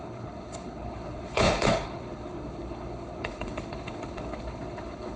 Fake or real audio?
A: fake